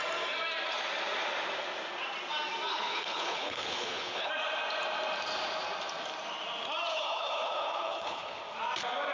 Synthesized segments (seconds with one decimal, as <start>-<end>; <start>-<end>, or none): 2.7-4.3; 6.9-8.4